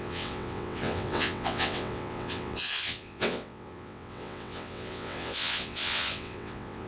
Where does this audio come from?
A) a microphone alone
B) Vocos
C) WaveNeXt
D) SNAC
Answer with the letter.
C